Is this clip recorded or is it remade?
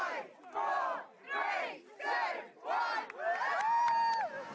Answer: recorded